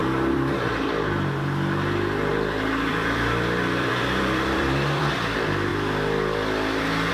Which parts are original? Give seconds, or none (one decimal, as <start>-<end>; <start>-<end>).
0.9-2.3; 5.1-7.1